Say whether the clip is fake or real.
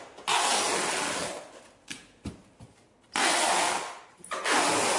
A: real